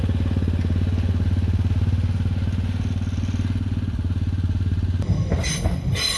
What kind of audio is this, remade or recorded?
recorded